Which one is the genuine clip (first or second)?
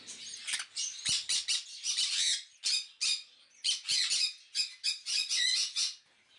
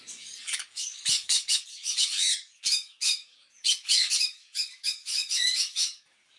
first